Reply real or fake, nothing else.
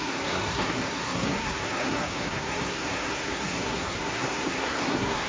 fake